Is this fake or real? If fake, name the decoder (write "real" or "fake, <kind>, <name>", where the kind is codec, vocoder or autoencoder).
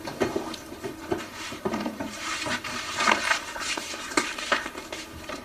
fake, vocoder, BigVGAN v2